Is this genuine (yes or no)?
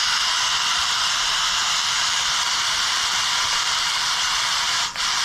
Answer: no